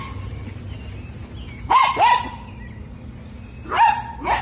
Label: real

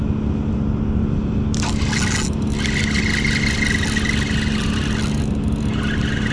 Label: real